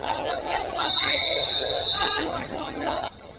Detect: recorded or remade remade